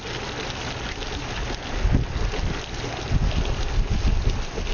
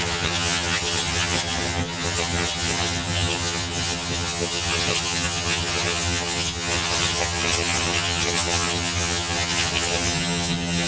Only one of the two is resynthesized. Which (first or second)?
second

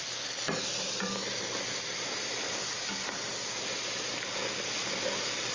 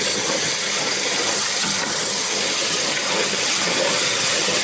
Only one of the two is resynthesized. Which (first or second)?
second